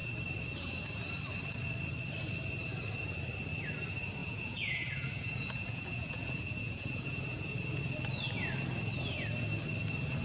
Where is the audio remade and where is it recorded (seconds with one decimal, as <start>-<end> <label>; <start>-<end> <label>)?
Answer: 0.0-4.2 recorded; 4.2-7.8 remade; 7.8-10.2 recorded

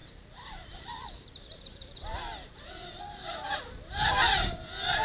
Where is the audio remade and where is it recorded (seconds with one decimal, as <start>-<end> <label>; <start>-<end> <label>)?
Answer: 0.0-3.0 remade; 3.0-5.0 recorded

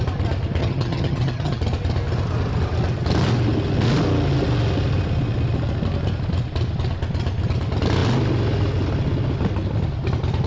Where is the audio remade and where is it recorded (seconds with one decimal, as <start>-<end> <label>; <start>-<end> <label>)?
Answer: 0.0-0.6 recorded; 0.6-1.6 remade; 1.6-10.5 recorded

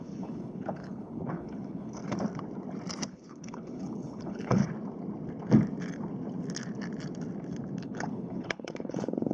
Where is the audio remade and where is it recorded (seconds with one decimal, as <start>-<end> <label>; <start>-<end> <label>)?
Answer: 0.0-2.0 remade; 2.0-3.1 recorded; 3.1-4.6 remade; 4.6-7.8 recorded; 7.8-9.3 remade

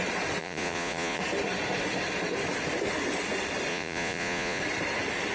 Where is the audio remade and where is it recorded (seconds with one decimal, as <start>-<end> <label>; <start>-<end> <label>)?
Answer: 0.0-0.4 recorded; 0.4-1.2 remade; 1.2-3.7 recorded; 3.7-4.6 remade; 4.6-5.3 recorded

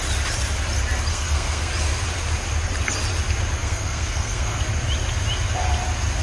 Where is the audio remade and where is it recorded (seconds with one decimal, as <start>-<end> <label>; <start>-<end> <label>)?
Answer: 0.0-1.1 recorded; 1.1-1.7 remade; 1.7-3.6 recorded; 3.6-4.6 remade; 4.6-6.2 recorded

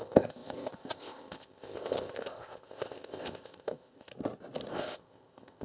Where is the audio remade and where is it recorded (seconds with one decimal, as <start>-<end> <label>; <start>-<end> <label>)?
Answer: 0.0-4.1 remade; 4.1-4.7 recorded; 4.7-5.6 remade